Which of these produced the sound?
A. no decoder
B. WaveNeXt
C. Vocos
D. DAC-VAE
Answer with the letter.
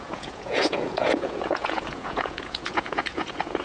C